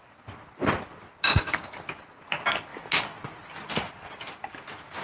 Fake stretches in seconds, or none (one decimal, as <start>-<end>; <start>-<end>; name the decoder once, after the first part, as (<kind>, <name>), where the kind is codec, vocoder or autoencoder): none

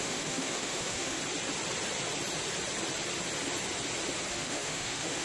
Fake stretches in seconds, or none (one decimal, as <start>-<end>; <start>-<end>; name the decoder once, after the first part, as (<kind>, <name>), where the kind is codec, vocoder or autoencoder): 0.0-1.2 (autoencoder, DAC-VAE); 4.3-5.2

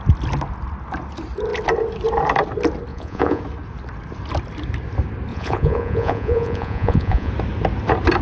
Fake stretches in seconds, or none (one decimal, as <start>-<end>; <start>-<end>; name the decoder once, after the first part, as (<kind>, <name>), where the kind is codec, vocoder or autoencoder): 2.9-3.4 (vocoder, Vocos); 5.3-7.3

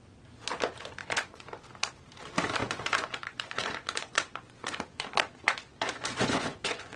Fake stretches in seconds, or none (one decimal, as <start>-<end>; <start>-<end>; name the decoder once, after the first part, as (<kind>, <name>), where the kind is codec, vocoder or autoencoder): 1.0-1.5 (vocoder, Vocos); 2.6-7.0

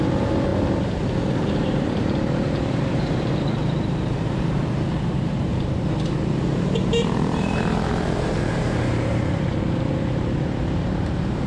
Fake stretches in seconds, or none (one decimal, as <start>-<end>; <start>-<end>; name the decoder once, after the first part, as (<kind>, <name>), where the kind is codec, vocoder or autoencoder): 0.0-5.5 (vocoder, BigVGAN v2); 6.6-11.5